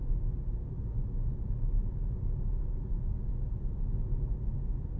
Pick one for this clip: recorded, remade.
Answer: recorded